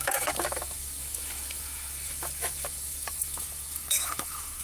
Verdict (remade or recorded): remade